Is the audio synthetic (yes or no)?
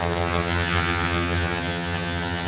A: yes